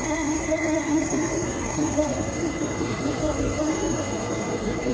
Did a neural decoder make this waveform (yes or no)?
yes